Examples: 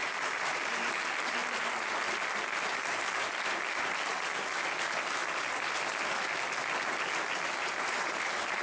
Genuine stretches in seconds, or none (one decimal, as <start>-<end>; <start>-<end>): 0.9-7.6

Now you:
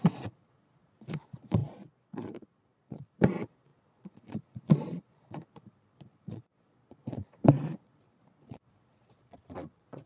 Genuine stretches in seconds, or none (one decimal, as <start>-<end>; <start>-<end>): none

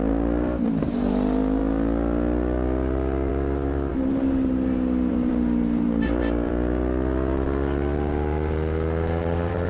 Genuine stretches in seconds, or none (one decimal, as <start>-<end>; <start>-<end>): 3.9-5.1

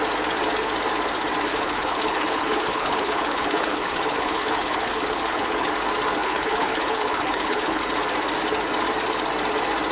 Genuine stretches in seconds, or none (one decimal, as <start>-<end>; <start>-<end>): 0.0-1.5; 5.7-6.2; 7.8-9.9

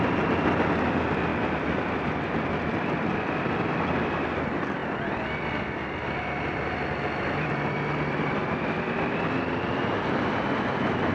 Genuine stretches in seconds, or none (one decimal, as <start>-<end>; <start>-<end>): 4.8-7.5; 8.4-9.1